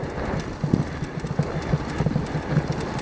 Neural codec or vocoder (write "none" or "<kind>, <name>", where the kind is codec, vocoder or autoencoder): none